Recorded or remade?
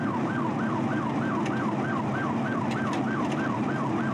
recorded